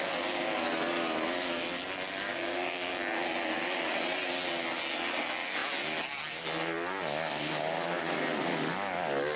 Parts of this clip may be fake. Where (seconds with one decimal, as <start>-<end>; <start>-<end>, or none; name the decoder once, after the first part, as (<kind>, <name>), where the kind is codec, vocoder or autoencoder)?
2.3-2.9 (codec, DAC)